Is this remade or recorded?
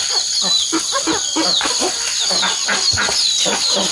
recorded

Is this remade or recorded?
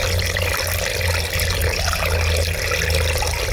recorded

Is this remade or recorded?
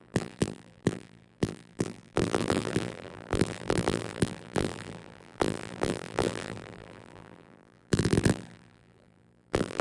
remade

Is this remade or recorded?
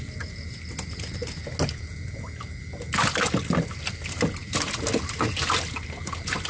recorded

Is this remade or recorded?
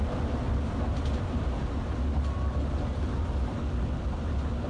recorded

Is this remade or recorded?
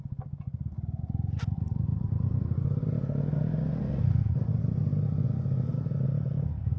recorded